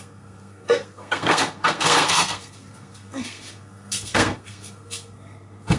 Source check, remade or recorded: remade